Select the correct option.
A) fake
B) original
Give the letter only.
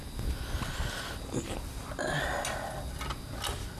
B